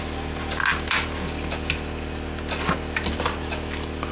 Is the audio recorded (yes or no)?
yes